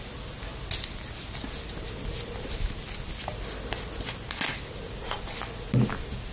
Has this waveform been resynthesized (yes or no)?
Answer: no